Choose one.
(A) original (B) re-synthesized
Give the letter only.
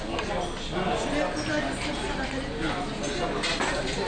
A